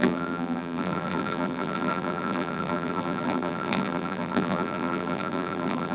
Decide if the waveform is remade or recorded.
remade